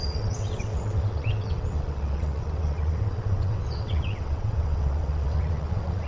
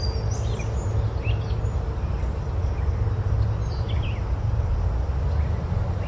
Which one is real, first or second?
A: second